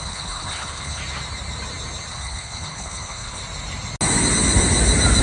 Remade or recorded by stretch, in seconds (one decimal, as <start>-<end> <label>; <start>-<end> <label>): 0.0-1.0 remade; 1.0-2.1 recorded; 2.1-3.4 remade; 3.4-5.2 recorded